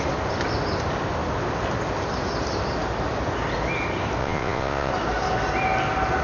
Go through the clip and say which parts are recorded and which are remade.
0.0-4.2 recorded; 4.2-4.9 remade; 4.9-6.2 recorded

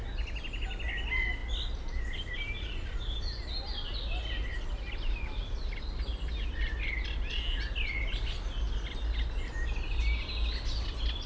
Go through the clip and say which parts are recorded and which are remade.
0.0-11.3 recorded